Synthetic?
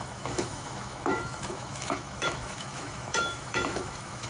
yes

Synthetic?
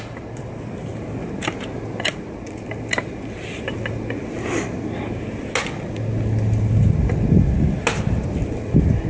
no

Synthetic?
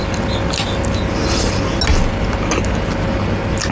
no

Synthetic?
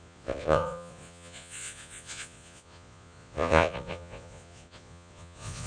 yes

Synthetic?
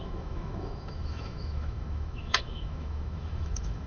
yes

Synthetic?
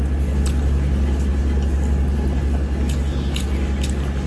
no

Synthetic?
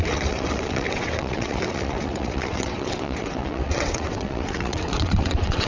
yes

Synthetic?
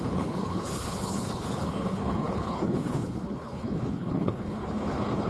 yes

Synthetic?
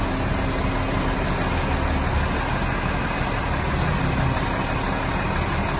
no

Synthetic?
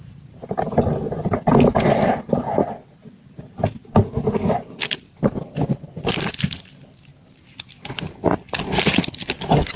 no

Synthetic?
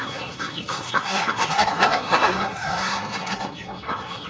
yes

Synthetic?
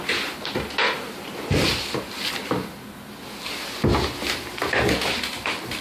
no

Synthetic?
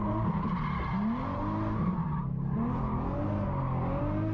no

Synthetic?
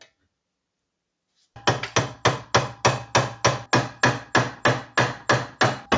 no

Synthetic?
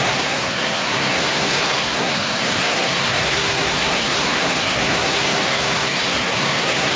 yes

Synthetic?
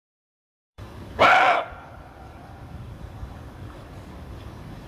yes